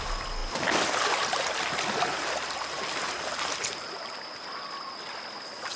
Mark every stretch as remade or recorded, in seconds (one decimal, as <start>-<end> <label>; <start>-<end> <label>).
0.0-5.8 recorded